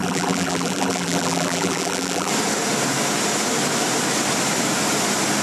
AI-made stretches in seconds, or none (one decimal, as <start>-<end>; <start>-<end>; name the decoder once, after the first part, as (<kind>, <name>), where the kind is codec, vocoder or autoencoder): 0.0-2.3 (vocoder, BigVGAN v2)